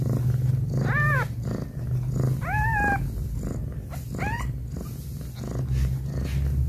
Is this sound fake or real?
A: real